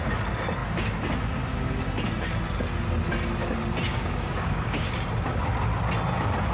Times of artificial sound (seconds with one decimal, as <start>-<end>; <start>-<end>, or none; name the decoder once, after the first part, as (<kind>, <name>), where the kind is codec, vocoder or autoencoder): 3.9-4.9 (codec, DAC)

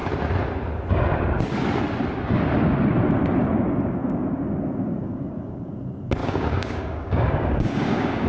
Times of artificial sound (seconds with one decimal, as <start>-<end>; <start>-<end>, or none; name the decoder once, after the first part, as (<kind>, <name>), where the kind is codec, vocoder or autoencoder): 4.0-5.7 (codec, DAC); 6.2-8.3

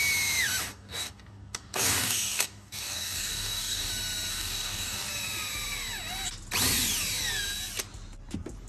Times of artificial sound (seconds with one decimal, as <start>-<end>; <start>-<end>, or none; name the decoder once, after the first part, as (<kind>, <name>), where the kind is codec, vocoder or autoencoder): 0.6-3.9 (codec, DAC); 4.3-5.1

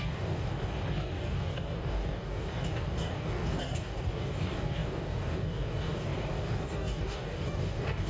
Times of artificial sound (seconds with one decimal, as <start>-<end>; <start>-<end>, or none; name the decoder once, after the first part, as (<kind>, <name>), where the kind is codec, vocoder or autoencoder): 0.0-8.1 (codec, DAC)

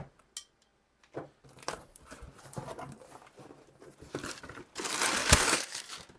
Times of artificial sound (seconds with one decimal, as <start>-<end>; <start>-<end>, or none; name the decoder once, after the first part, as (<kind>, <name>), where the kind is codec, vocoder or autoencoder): 5.2-5.8 (codec, DAC)

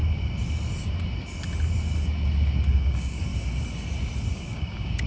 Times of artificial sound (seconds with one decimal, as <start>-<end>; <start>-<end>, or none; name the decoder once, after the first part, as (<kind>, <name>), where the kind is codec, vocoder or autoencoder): 2.7-3.3 (codec, DAC); 4.3-5.1